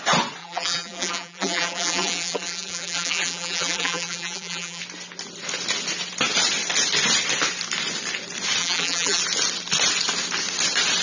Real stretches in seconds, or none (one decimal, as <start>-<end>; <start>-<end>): 0.0-0.4; 4.8-8.6; 9.2-11.0